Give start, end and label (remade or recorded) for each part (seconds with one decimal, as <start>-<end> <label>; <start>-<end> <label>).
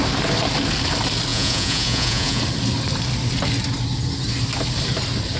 0.0-1.3 recorded; 1.3-2.4 remade; 2.4-5.4 recorded